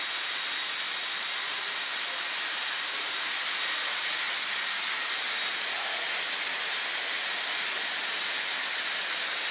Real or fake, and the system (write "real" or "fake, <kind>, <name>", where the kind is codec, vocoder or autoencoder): real